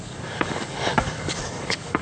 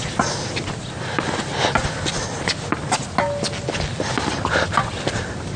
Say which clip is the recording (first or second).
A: second